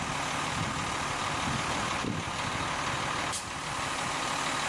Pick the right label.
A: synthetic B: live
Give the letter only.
B